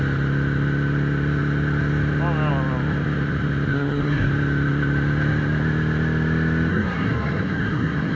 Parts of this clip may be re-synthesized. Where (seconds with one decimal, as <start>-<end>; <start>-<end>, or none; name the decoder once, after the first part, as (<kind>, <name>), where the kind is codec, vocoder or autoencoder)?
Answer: 3.7-4.3 (codec, SNAC); 6.7-8.2